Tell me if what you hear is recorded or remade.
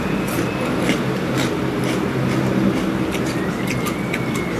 recorded